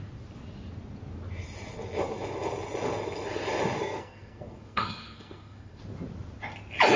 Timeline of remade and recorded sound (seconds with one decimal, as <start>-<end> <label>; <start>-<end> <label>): 0.0-3.8 recorded; 3.8-5.8 remade; 5.8-7.0 recorded